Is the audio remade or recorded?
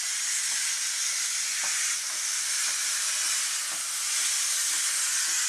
recorded